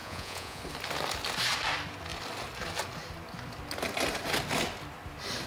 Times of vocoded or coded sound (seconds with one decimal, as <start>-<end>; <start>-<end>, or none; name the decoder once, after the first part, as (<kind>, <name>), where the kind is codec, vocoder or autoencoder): 0.0-0.6 (vocoder, Vocos)